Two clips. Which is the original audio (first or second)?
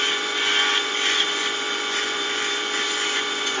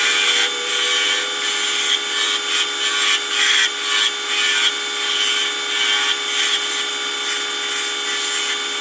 second